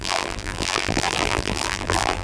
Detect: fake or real fake